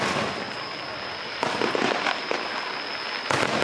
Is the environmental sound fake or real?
real